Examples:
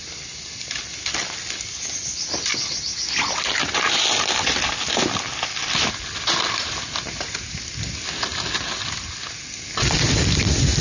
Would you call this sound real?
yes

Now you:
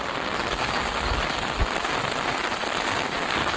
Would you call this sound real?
yes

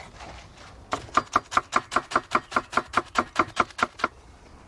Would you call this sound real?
yes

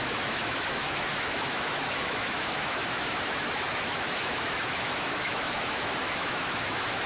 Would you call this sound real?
no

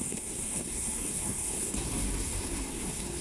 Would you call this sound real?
no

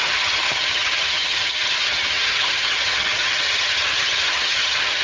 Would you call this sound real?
no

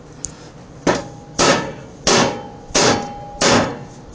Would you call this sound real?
yes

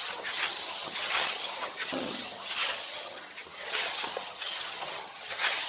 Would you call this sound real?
no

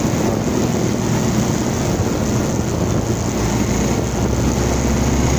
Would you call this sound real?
yes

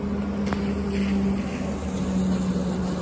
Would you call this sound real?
yes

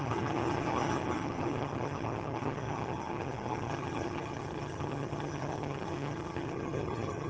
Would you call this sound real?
no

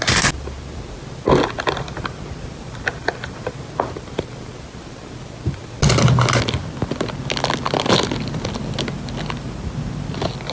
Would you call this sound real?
yes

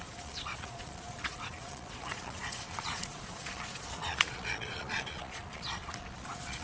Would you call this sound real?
no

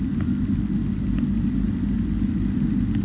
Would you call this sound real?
yes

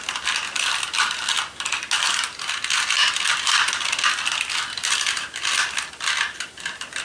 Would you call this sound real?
yes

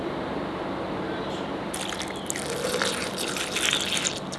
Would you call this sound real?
yes